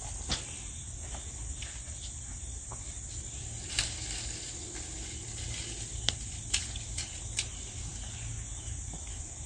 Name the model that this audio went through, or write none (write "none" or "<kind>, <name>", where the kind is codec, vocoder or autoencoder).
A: none